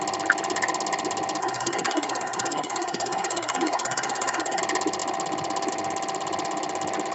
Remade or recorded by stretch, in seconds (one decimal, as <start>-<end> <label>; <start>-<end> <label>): 0.0-1.4 recorded; 1.4-4.6 remade; 4.6-7.1 recorded

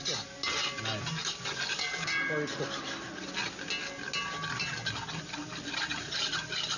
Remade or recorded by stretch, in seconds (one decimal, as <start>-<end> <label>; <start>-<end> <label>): 0.0-1.2 recorded; 1.2-3.6 remade; 3.6-6.8 recorded

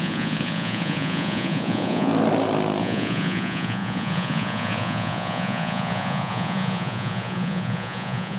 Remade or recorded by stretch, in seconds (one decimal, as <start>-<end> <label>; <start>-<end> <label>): 0.0-2.1 remade; 2.1-2.8 recorded; 2.8-8.4 remade